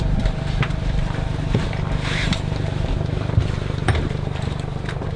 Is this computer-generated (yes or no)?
yes